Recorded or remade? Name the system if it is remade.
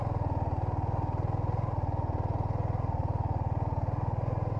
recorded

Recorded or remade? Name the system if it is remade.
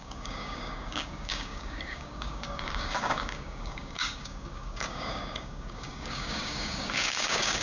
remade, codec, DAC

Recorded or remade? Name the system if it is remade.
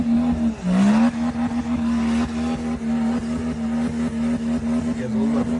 recorded